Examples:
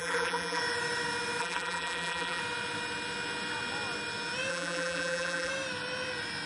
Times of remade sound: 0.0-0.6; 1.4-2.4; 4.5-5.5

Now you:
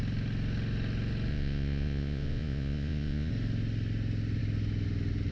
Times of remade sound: 1.3-3.3

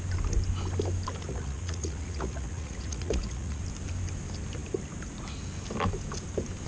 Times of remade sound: 1.3-3.6

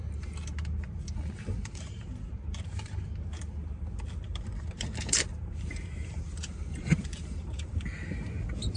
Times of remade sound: 1.6-2.3; 4.3-7.7

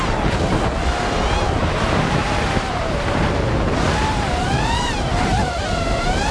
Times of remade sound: 1.6-6.3